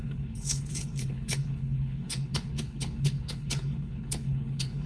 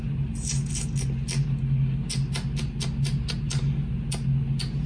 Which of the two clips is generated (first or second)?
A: first